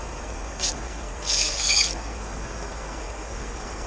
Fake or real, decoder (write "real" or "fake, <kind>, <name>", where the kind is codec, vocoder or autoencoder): fake, codec, SNAC